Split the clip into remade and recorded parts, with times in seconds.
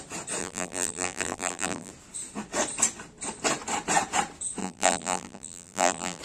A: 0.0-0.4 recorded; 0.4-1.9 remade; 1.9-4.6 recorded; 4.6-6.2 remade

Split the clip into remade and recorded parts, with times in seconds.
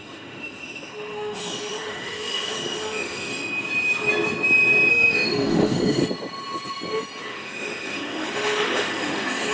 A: 0.0-3.3 remade; 3.3-4.9 recorded; 4.9-6.0 remade; 6.0-7.2 recorded; 7.2-9.5 remade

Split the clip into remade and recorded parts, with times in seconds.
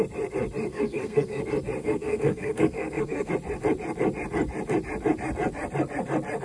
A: 0.0-0.7 recorded; 0.7-1.4 remade; 1.4-1.8 recorded; 1.8-3.3 remade; 3.3-6.4 recorded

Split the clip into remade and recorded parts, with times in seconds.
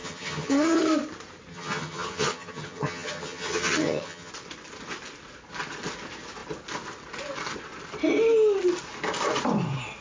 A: 0.0-0.8 remade; 0.8-1.5 recorded; 1.5-4.3 remade; 4.3-10.0 recorded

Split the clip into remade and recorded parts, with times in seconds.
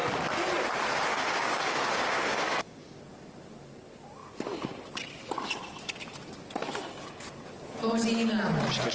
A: 0.0-1.1 recorded; 1.1-3.0 remade; 3.0-8.9 recorded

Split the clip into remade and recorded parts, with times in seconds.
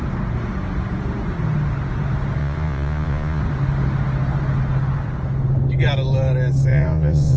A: 0.0-2.4 recorded; 2.4-3.4 remade; 3.4-6.7 recorded; 6.7-7.4 remade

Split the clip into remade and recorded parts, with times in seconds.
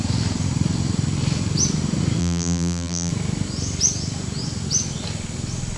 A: 0.0-2.2 recorded; 2.2-3.1 remade; 3.1-5.8 recorded